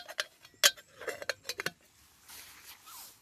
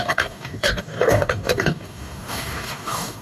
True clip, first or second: first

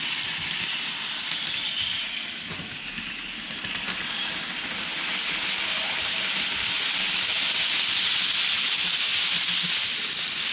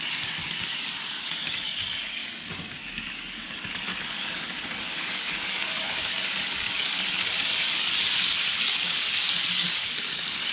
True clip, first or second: first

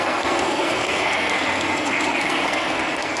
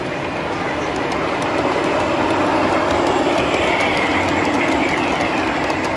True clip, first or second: second